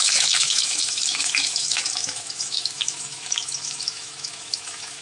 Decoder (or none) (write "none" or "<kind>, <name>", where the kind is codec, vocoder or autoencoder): autoencoder, DAC-VAE